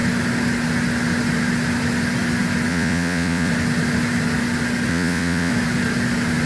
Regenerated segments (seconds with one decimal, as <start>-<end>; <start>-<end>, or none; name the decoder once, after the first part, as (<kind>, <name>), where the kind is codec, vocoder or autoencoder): 2.7-3.5 (vocoder, Vocos); 4.9-5.5